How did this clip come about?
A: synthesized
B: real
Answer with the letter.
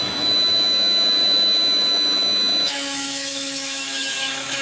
A